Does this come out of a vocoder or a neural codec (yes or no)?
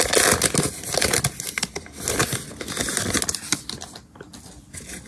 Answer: no